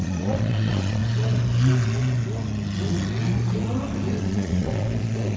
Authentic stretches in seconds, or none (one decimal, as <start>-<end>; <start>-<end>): 1.0-4.2